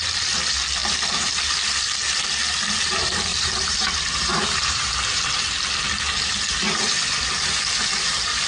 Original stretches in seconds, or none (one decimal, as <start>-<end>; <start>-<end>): 0.0-0.8; 1.6-3.3; 5.5-8.5

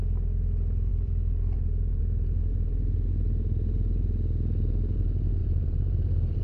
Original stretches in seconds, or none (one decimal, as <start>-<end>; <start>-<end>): 0.0-0.9; 2.0-5.4

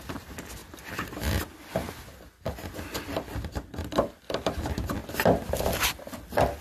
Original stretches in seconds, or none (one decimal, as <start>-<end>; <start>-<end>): 0.0-6.6

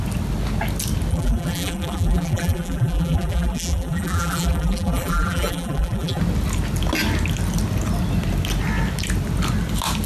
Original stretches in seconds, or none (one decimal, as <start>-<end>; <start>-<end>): 0.0-1.1; 6.2-10.1

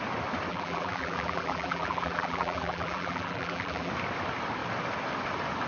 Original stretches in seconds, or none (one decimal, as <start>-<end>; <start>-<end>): 0.0-0.5; 3.9-5.7

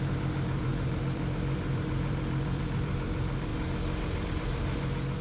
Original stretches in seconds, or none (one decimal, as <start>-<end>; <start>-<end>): 3.5-4.3